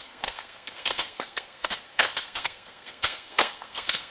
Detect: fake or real fake